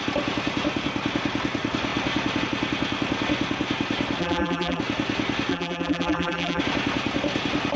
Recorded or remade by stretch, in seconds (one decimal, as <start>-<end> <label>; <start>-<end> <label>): 0.0-4.2 recorded; 4.2-4.8 remade; 4.8-5.5 recorded; 5.5-6.6 remade; 6.6-7.8 recorded